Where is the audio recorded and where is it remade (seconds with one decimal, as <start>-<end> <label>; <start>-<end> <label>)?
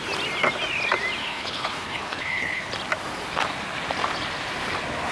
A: 0.0-1.2 recorded; 1.2-2.7 remade; 2.7-5.1 recorded